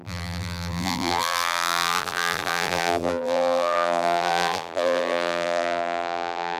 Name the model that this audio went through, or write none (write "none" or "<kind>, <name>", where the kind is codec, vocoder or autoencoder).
vocoder, BigVGAN v2